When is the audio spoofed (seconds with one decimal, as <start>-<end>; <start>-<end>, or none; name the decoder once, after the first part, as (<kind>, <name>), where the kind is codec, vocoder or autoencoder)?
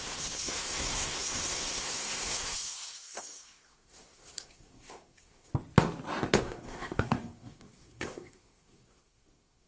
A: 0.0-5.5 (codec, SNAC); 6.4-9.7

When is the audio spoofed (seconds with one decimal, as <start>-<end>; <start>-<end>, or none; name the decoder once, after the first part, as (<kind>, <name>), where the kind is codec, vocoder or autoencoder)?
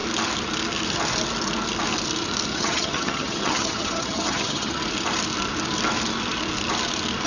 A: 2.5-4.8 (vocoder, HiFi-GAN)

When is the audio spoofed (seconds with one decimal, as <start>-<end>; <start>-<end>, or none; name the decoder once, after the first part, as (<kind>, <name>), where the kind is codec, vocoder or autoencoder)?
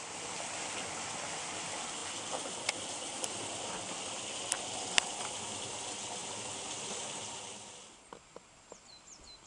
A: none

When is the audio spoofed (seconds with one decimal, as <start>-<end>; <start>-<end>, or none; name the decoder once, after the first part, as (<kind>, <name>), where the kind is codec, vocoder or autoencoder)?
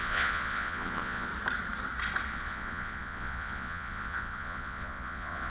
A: 0.0-1.3 (vocoder, Vocos); 2.3-5.5